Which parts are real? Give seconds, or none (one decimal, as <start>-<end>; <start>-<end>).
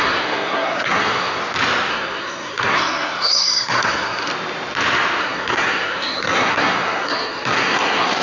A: 1.4-1.9; 4.3-5.2